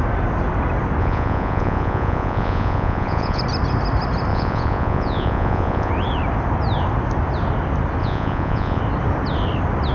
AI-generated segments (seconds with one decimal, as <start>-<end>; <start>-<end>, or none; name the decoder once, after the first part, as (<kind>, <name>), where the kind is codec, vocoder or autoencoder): 1.0-3.4 (vocoder, Vocos); 4.3-5.9; 8.0-8.8